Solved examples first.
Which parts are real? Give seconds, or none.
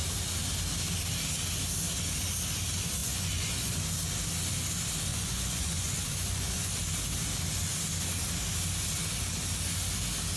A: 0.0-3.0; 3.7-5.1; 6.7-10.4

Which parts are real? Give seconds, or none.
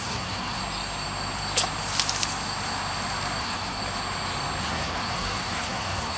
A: 0.6-3.4; 3.8-4.6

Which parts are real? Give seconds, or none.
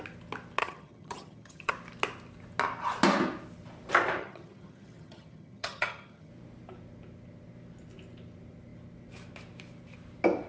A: 0.0-0.6; 1.7-4.2; 6.3-10.5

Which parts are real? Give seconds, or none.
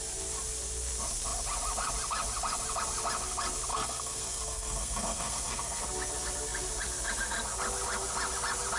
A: 0.0-3.7; 5.8-8.8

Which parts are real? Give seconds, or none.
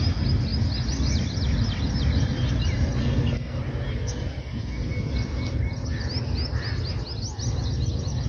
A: 0.0-3.0; 3.6-8.3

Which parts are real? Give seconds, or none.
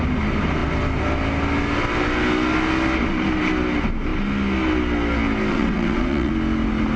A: 0.0-5.5; 6.3-7.0